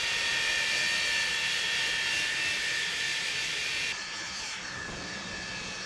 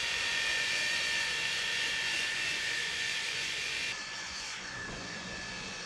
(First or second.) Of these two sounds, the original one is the first